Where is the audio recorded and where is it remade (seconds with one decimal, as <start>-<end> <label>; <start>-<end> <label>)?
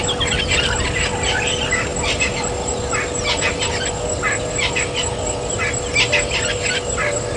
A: 0.0-7.4 recorded